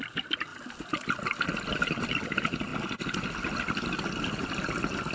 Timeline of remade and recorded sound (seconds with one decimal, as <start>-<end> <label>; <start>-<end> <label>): 0.0-5.1 recorded